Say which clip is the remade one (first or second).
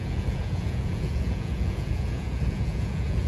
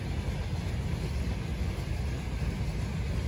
first